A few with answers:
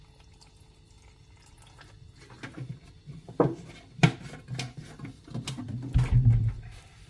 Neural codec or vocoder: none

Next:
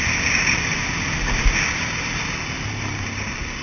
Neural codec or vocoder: none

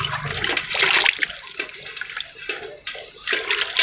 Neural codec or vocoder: none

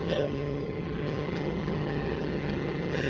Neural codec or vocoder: vocoder, HiFi-GAN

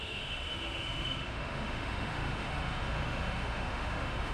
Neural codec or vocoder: autoencoder, DAC-VAE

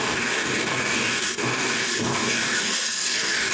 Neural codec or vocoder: codec, DAC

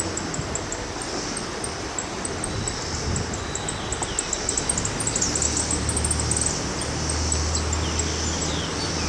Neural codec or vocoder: none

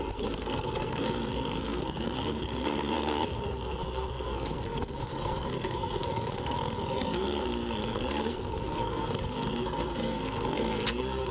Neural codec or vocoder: codec, SNAC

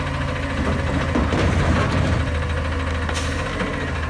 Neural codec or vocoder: none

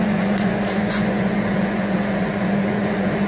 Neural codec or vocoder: vocoder, Vocos